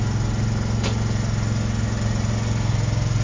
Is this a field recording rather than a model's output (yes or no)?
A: yes